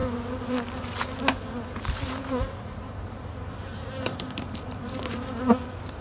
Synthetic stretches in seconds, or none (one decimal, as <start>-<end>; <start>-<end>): 2.2-5.4